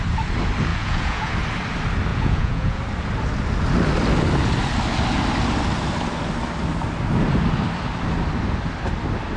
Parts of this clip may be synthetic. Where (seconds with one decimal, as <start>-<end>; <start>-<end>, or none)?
0.7-1.3; 2.1-2.8

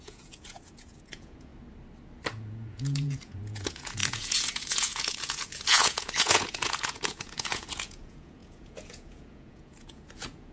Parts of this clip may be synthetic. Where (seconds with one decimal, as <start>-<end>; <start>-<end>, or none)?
0.0-1.5; 2.3-10.5

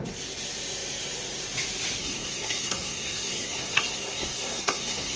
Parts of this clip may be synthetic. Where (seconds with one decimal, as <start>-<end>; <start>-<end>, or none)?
2.0-5.2

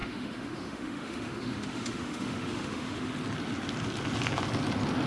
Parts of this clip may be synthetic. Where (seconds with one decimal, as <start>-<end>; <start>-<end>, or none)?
0.0-3.1

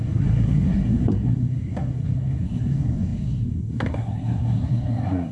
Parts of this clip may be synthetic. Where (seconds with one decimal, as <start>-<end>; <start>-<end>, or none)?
0.0-5.3

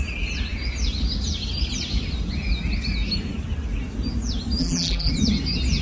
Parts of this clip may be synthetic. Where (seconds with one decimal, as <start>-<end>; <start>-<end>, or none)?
4.6-5.1

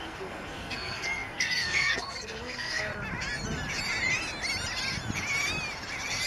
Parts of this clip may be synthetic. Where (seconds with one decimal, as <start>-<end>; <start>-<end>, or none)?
0.0-2.9